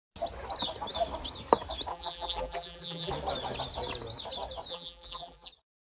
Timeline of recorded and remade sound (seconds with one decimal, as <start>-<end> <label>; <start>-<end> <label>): 0.0-1.9 recorded; 1.9-3.1 remade; 3.1-4.7 recorded; 4.7-5.5 remade; 5.5-5.9 recorded